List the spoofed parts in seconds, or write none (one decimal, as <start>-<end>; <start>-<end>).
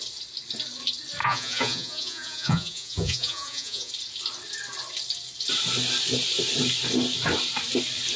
1.2-3.9